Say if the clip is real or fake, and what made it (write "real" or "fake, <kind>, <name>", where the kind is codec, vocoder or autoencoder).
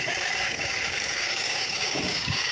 fake, codec, DAC